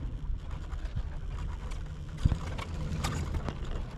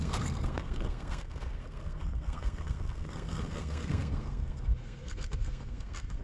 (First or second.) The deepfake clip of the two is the second